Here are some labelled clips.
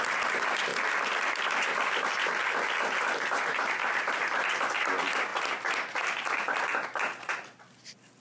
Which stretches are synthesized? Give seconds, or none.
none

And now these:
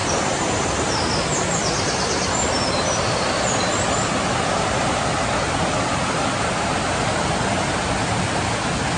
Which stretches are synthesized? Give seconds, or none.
0.0-1.1 (vocoder, BigVGAN v2)

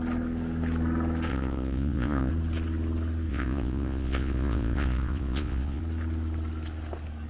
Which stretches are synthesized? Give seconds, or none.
1.3-2.3 (vocoder, Vocos); 3.3-5.8

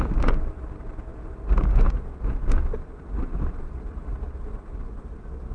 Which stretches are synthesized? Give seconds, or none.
1.1-2.0 (vocoder, BigVGAN v2)

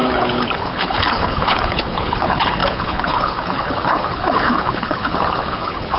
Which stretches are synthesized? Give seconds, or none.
0.0-6.0 (codec, HILCodec)

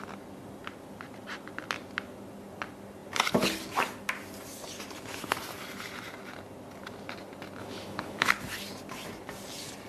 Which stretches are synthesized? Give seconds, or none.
7.6-8.3 (autoencoder, DAC-VAE)

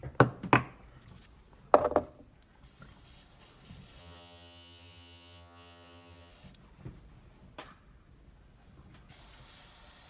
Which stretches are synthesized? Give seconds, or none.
4.0-6.3 (vocoder, HiFi-GAN)

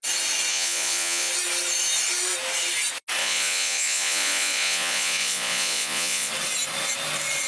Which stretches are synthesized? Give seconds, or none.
0.5-1.3 (vocoder, Vocos); 3.2-6.3